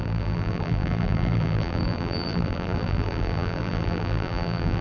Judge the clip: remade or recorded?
remade